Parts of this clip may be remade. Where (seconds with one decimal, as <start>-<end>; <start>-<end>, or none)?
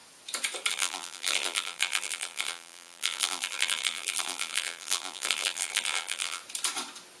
0.7-6.4